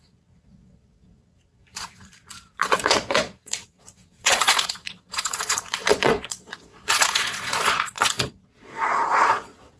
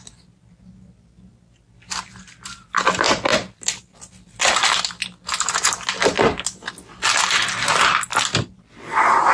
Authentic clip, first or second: second